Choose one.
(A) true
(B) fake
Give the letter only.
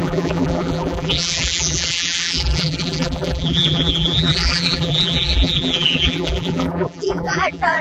B